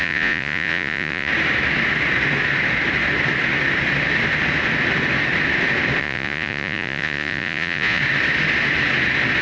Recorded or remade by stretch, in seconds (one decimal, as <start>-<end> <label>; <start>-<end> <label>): 0.0-1.3 remade; 1.3-6.0 recorded; 6.0-8.0 remade; 8.0-9.4 recorded